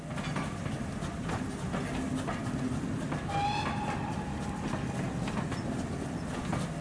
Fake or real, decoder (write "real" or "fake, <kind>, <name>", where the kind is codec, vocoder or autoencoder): real